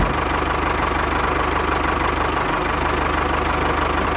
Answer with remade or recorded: recorded